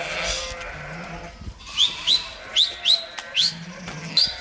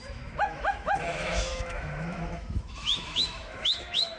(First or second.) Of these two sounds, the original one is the first